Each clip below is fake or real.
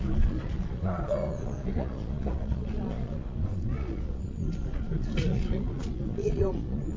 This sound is fake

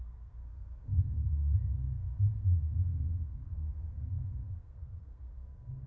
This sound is fake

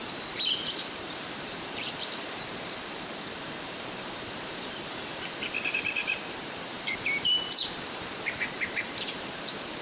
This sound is fake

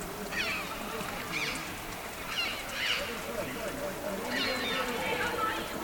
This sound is real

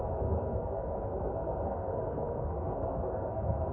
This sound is fake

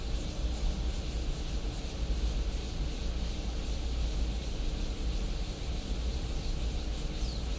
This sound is real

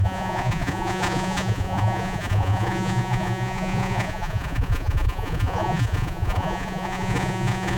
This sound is fake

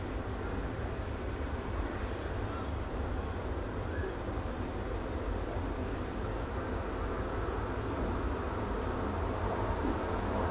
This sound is real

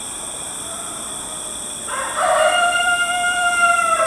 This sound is fake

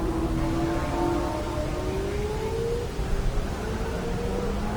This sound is real